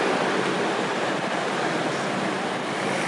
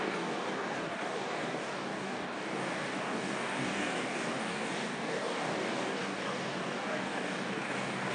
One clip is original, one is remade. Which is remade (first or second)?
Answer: second